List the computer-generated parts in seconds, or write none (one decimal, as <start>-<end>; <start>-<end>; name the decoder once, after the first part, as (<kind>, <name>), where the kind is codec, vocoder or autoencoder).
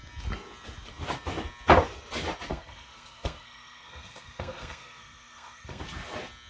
2.5-5.8 (codec, SNAC)